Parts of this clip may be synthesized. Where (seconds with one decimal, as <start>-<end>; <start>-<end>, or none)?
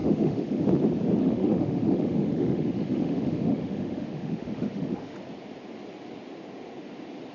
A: 0.0-0.6; 1.2-5.2